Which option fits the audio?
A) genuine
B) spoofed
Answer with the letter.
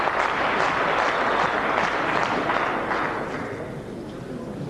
A